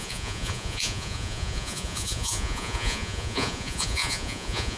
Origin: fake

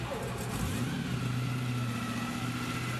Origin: real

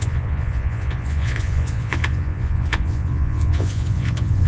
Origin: fake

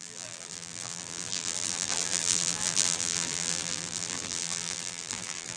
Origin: fake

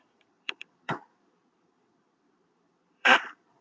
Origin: fake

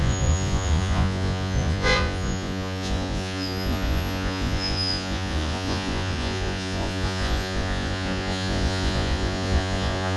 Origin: fake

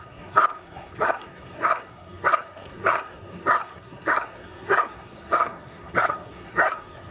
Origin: fake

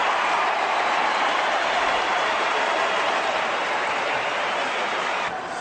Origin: fake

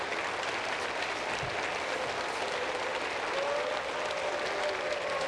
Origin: real